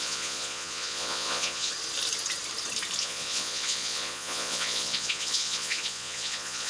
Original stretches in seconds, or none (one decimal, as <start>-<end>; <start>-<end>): 1.7-3.0